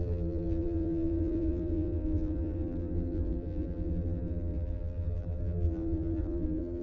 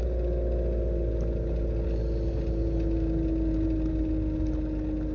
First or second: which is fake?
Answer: first